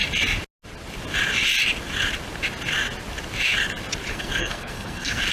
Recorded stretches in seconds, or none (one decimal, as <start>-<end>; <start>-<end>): 0.0-4.1